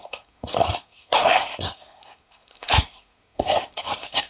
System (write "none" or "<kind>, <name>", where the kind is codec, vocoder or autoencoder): codec, SNAC